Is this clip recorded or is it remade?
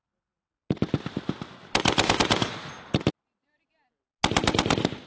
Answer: recorded